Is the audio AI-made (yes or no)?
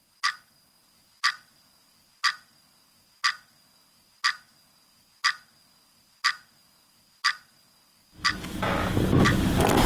no